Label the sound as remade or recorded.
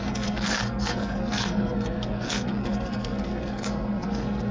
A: remade